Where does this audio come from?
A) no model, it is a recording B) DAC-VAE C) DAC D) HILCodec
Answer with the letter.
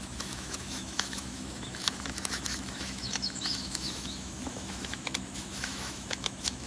B